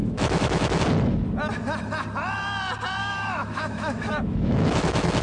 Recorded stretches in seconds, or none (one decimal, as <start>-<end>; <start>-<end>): 0.8-3.0